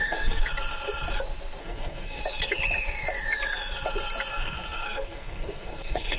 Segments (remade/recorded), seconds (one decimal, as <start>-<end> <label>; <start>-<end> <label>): 0.0-0.4 remade; 0.4-1.6 recorded; 1.6-2.2 remade; 2.2-4.3 recorded; 4.3-6.2 remade